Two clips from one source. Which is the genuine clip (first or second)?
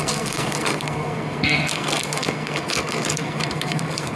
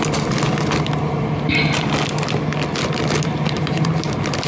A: second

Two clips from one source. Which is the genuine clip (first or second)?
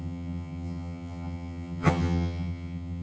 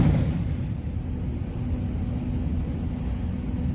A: second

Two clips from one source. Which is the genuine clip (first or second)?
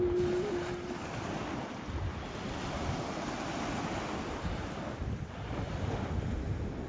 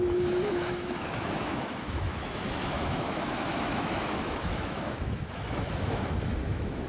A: first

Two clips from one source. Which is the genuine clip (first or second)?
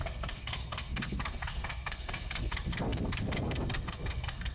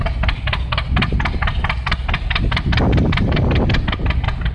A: second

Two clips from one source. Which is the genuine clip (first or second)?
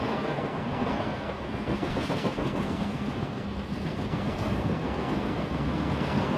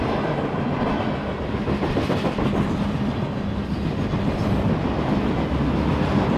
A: second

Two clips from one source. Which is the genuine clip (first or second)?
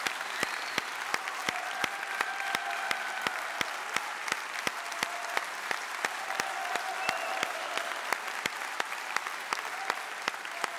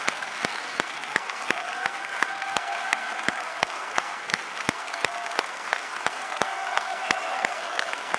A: first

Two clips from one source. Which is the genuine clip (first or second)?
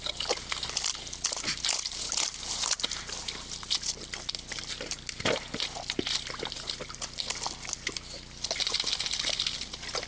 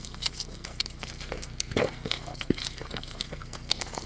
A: first